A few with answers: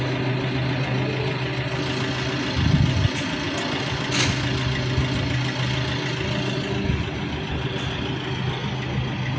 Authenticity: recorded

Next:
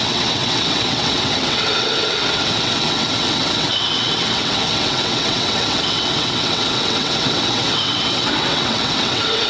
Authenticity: remade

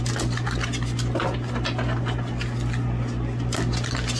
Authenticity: recorded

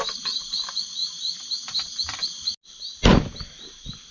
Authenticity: recorded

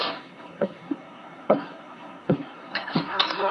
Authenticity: remade